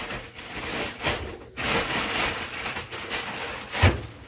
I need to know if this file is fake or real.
real